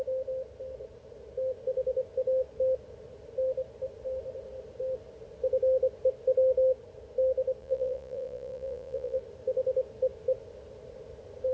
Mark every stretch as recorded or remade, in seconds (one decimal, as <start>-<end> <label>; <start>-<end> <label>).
0.0-7.6 recorded; 7.6-9.2 remade; 9.2-11.5 recorded